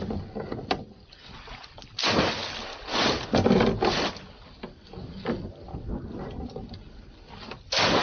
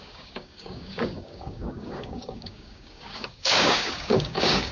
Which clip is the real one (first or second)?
first